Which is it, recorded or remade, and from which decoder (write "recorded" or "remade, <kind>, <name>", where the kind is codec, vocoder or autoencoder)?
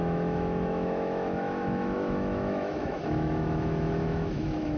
remade, autoencoder, DAC-VAE